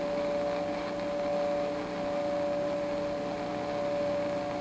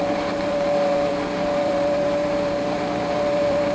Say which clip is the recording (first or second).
first